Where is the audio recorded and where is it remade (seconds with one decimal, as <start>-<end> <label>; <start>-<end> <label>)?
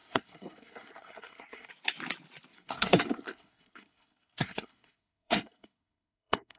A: 0.0-1.7 remade; 1.7-2.5 recorded; 2.5-6.6 remade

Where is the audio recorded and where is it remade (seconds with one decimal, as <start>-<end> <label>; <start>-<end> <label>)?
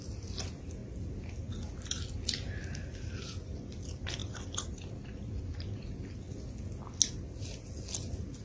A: 0.0-8.4 recorded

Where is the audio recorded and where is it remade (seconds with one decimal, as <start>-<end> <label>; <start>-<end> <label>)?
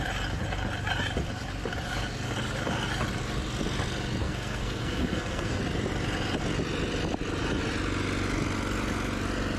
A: 0.0-4.2 recorded; 4.2-5.6 remade; 5.6-9.6 recorded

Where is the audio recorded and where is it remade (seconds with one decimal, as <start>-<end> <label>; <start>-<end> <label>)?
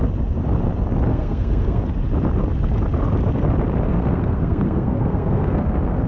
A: 0.0-1.1 recorded; 1.1-1.8 remade; 1.8-3.9 recorded; 3.9-6.1 remade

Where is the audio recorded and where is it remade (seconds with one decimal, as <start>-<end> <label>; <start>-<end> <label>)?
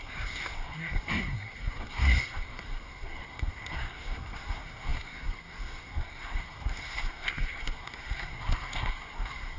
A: 0.0-9.6 remade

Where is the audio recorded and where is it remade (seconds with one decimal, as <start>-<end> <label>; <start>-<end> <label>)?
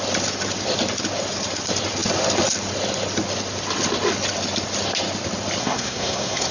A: 0.0-5.6 recorded; 5.6-6.5 remade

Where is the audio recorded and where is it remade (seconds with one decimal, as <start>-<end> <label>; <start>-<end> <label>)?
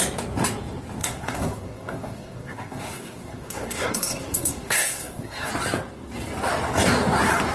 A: 0.0-1.0 recorded; 1.0-5.5 remade; 5.5-7.5 recorded